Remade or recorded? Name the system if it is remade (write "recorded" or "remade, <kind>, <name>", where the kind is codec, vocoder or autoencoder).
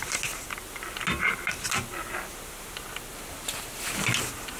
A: recorded